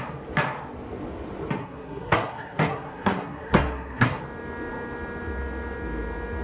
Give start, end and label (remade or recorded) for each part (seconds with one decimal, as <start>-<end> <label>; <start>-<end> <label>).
0.0-1.6 recorded; 1.6-4.2 remade; 4.2-6.4 recorded